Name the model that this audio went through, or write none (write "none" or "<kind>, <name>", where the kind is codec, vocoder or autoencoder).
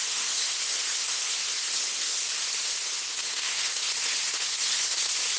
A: codec, SNAC